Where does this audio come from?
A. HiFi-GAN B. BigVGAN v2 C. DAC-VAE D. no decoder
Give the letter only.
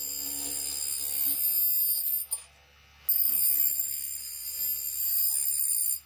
D